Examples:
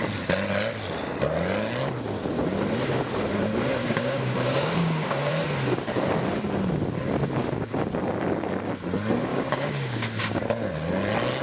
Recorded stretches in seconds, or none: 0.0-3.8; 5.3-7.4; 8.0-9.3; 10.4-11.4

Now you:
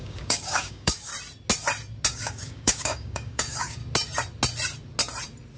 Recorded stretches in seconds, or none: 1.1-2.1; 3.8-5.6

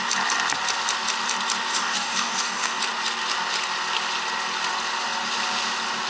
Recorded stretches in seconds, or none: 0.0-1.7; 2.8-6.1

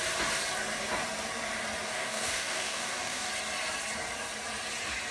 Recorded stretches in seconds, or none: 0.0-1.9; 3.3-5.1

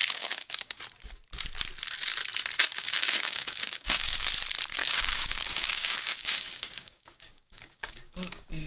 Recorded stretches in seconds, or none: 0.8-2.7; 4.3-4.8